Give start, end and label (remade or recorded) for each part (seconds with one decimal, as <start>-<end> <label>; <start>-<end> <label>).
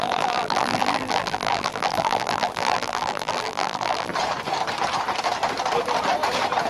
0.0-4.1 remade; 4.1-6.7 recorded